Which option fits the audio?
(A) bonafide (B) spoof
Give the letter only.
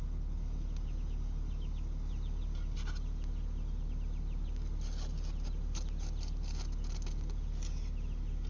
A